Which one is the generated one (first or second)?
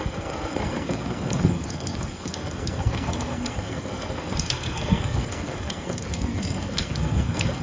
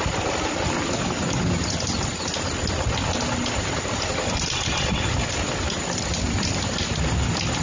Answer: first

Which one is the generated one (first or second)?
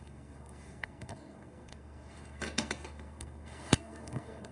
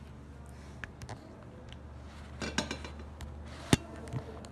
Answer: first